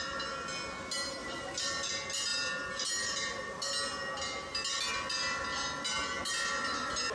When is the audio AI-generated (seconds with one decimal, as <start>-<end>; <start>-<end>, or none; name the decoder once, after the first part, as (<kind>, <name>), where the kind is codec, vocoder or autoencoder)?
1.2-1.9 (vocoder, BigVGAN v2)